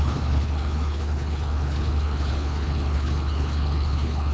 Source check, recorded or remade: remade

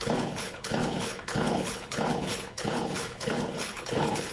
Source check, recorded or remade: remade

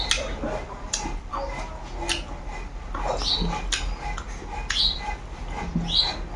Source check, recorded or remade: recorded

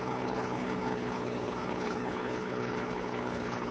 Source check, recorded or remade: remade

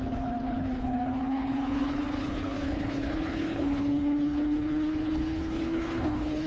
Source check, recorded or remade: remade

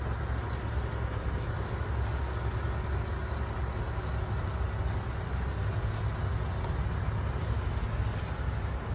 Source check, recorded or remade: recorded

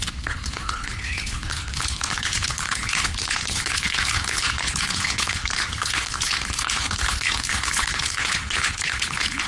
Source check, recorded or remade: remade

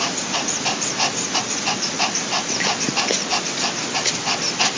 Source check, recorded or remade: recorded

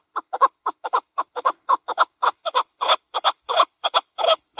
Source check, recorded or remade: remade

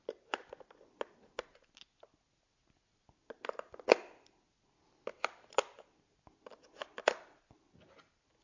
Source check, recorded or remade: recorded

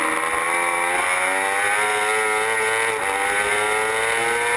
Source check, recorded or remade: recorded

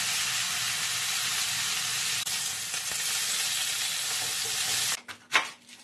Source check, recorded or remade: recorded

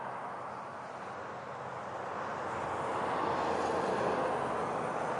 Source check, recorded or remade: recorded